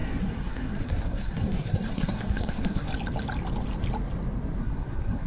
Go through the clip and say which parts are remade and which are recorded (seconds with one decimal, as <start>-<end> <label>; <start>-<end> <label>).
0.0-2.9 remade; 2.9-4.6 recorded; 4.6-5.3 remade